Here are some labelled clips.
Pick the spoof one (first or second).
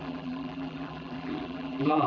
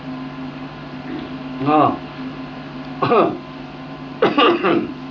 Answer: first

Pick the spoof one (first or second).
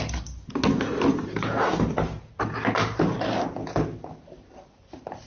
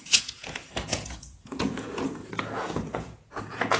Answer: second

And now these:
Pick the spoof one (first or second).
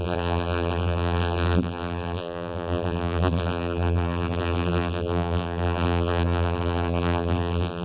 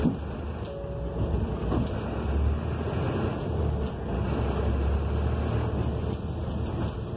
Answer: first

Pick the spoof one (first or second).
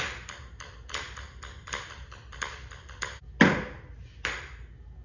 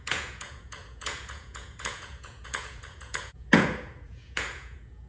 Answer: second